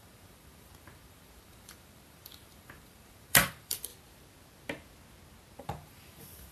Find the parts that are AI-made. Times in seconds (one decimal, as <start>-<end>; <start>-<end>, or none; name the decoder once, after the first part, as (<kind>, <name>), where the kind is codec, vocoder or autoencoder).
0.0-3.9 (vocoder, BigVGAN v2); 5.6-6.5